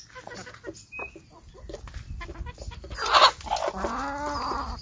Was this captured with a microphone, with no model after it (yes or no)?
yes